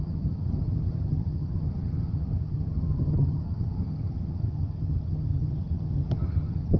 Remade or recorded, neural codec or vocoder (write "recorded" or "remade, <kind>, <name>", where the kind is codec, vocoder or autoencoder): remade, vocoder, HiFi-GAN